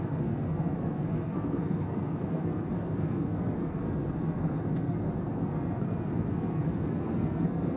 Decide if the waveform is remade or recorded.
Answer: remade